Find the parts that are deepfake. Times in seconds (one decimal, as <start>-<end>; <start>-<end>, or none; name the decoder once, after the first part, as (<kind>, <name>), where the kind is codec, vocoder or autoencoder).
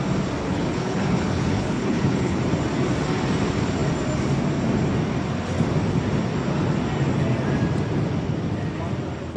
0.4-2.4 (codec, HILCodec)